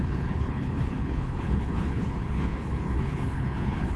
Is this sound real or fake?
fake